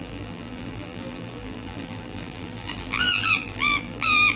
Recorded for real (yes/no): no